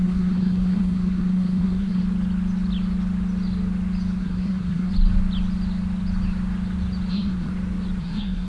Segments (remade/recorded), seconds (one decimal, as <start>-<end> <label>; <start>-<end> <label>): 0.0-2.0 remade; 2.0-4.2 recorded; 4.2-4.9 remade; 4.9-7.1 recorded; 7.1-7.5 remade; 7.5-8.0 recorded; 8.0-8.5 remade